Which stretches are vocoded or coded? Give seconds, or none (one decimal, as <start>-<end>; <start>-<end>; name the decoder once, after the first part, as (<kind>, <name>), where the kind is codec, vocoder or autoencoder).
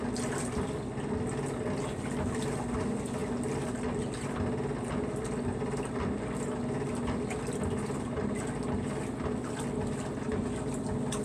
none